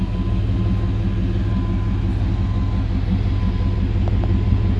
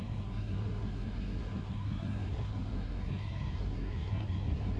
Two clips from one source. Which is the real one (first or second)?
first